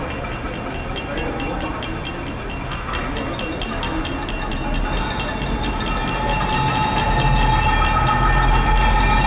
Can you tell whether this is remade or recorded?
recorded